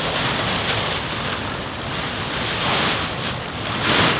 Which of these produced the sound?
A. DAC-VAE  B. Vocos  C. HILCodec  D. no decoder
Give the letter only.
D